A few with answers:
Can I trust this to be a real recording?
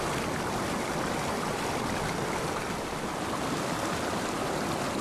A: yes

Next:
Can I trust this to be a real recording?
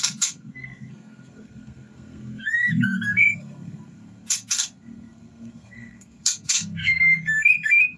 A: no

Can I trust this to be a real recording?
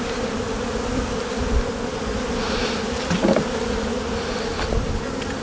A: yes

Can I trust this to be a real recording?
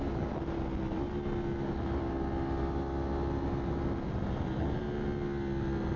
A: yes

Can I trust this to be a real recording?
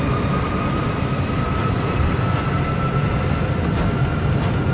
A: yes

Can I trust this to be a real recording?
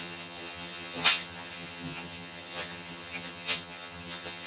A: no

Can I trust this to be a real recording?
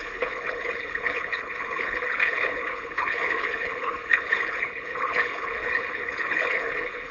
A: no